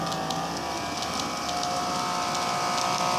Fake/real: real